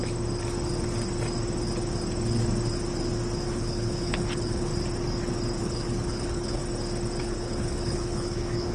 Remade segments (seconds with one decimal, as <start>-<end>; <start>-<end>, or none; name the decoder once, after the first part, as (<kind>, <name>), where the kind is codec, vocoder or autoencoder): 3.5-4.7 (codec, HILCodec); 5.6-6.6; 7.2-8.7